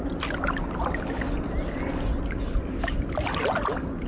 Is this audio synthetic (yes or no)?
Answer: no